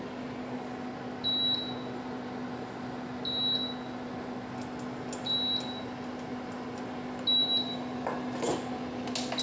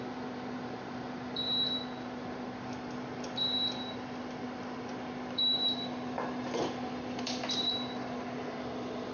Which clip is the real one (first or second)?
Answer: first